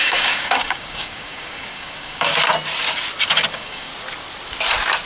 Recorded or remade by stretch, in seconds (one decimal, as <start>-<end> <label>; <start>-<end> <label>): 0.0-2.3 remade; 2.3-3.5 recorded; 3.5-3.9 remade; 3.9-5.1 recorded